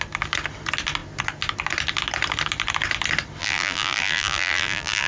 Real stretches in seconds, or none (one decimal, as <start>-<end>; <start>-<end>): 0.0-3.4